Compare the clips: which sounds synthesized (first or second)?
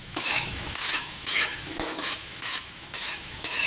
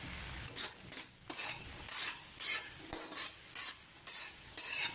first